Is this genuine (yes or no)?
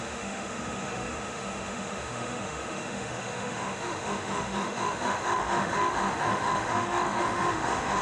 no